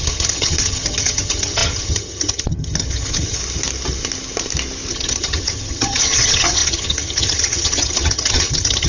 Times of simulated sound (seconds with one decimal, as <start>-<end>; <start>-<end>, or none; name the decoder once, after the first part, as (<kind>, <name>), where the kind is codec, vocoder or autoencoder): 0.0-3.4 (vocoder, HiFi-GAN); 4.9-8.9